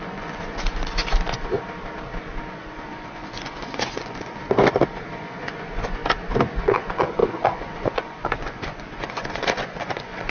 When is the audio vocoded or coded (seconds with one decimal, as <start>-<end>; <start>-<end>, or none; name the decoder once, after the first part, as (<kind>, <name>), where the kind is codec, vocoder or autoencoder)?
0.0-1.0 (vocoder, Vocos); 2.5-4.4; 5.2-6.0; 6.6-10.3